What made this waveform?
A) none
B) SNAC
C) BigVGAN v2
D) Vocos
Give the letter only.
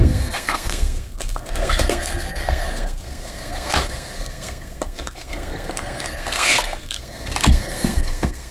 B